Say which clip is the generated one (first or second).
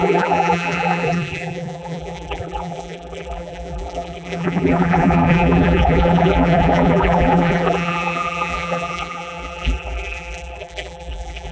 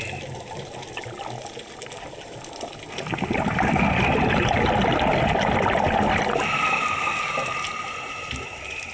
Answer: first